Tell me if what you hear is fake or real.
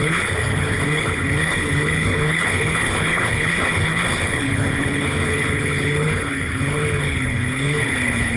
fake